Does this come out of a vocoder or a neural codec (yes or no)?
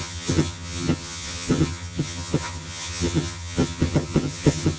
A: yes